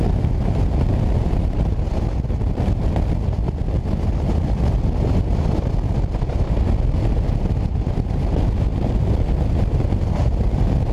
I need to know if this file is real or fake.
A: real